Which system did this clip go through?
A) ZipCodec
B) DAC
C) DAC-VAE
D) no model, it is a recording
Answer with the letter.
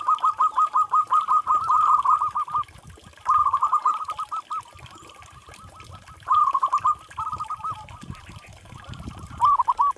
D